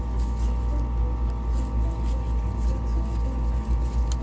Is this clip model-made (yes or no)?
no